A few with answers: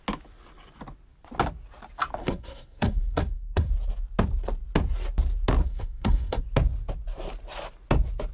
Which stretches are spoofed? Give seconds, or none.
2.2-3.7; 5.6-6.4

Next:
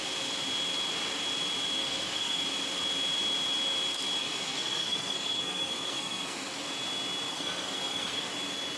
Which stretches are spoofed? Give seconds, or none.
1.8-2.4; 4.2-6.5; 7.3-8.3

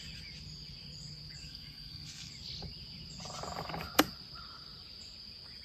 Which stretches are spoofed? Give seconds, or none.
1.4-2.3

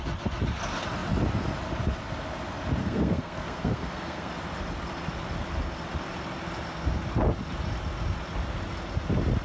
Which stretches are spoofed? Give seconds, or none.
2.8-4.3